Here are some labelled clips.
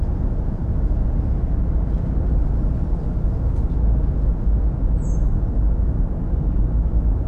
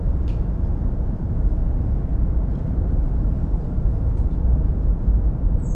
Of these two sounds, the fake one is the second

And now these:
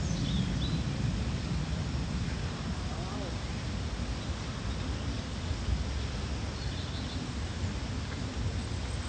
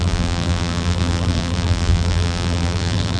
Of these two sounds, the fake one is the second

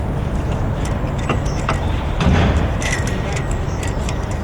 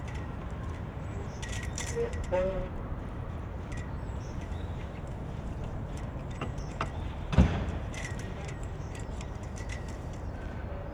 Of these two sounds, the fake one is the second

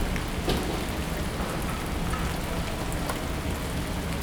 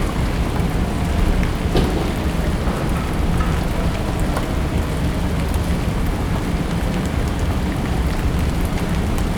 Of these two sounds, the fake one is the second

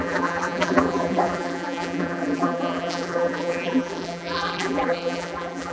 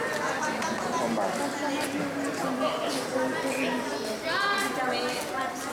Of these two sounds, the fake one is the first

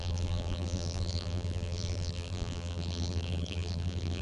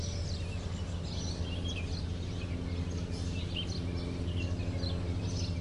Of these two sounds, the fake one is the first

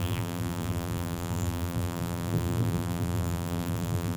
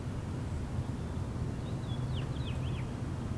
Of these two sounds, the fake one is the first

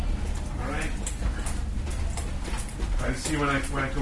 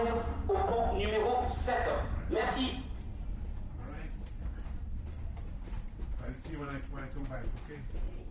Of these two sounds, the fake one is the second